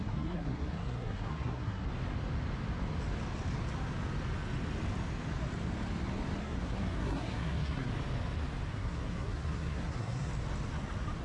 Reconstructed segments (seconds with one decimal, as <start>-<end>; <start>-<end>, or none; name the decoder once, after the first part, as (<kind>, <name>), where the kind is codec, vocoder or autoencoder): 0.0-1.9 (codec, SNAC); 6.4-7.9; 8.7-10.3

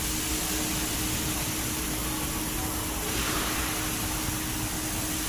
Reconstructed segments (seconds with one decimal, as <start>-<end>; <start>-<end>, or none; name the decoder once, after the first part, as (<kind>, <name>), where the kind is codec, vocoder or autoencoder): none

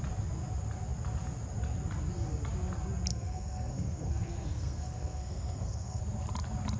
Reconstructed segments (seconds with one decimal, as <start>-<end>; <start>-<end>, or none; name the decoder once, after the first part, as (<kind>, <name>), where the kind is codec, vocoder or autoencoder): 3.1-6.0 (codec, SNAC)

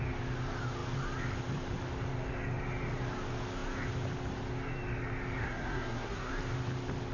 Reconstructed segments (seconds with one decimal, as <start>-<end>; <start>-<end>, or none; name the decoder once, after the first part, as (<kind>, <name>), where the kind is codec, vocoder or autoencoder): 5.4-6.3 (codec, SNAC)